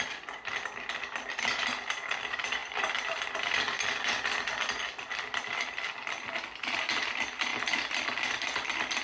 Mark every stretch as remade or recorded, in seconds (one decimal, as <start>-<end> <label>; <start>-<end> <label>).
0.0-9.0 recorded